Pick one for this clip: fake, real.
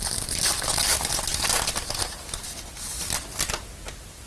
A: real